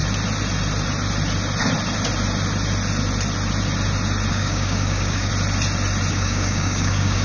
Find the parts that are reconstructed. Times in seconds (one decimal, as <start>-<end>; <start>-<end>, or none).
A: 4.3-5.3; 6.1-7.2